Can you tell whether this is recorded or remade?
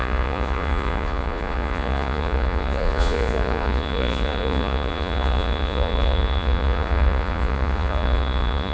remade